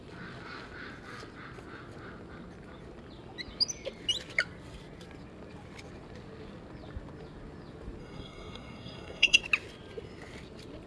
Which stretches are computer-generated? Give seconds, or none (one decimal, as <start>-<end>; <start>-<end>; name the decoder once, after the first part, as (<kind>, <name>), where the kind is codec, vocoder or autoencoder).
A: 8.0-9.4 (codec, SNAC)